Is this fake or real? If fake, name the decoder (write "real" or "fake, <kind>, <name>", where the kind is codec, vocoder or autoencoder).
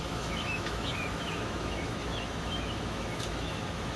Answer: fake, autoencoder, DAC-VAE